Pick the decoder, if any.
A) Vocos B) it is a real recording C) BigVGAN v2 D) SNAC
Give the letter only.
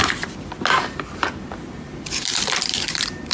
C